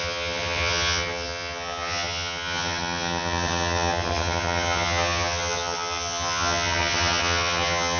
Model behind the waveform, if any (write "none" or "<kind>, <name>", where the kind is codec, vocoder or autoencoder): vocoder, HiFi-GAN